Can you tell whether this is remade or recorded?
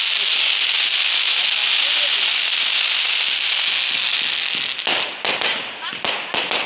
recorded